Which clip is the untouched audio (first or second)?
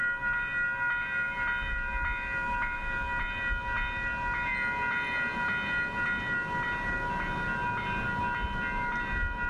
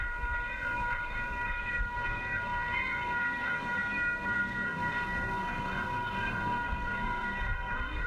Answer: first